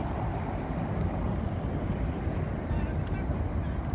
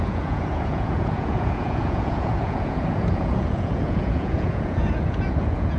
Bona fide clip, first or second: first